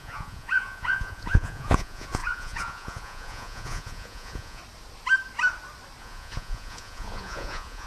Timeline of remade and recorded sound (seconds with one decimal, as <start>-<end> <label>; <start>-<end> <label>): 0.0-4.6 remade; 4.6-6.0 recorded; 6.0-7.9 remade